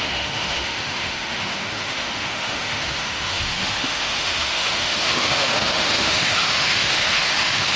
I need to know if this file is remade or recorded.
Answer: remade